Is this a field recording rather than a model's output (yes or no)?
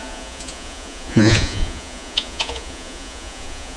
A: no